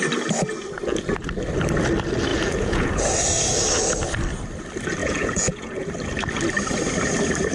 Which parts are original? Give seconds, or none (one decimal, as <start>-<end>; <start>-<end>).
0.0-2.3; 2.9-5.0; 5.9-7.5